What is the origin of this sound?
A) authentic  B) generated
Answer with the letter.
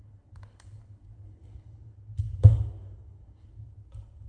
B